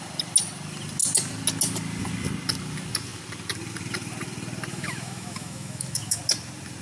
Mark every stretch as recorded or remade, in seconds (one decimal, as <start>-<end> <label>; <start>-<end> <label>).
0.0-4.7 recorded; 4.7-6.2 remade; 6.2-6.8 recorded